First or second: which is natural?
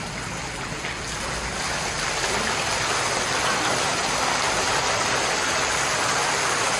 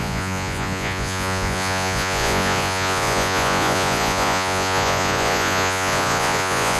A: first